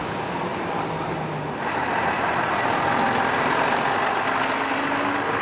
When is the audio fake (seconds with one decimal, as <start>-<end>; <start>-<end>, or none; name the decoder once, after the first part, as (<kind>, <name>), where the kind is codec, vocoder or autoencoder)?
none